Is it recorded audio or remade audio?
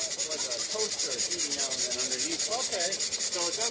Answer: recorded